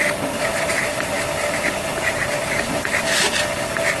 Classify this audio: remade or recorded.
recorded